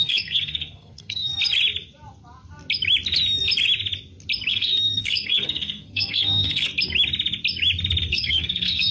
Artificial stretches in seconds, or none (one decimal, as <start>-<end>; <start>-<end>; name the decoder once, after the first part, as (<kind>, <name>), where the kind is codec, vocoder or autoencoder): 0.0-1.3 (codec, SNAC); 4.5-6.7; 8.0-8.9